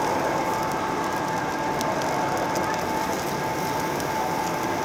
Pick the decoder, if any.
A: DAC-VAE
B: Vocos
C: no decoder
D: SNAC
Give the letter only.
C